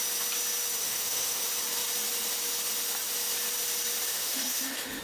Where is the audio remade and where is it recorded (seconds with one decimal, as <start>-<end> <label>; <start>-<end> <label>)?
0.0-0.8 recorded; 0.8-1.4 remade; 1.4-4.1 recorded; 4.1-5.0 remade